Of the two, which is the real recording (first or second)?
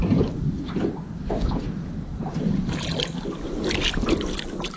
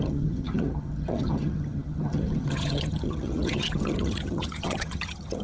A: first